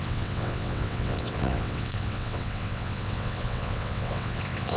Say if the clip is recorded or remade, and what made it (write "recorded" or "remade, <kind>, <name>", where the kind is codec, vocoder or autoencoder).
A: remade, vocoder, WaveNeXt